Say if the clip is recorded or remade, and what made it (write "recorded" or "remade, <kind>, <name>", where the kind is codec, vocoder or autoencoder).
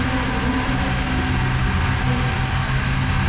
recorded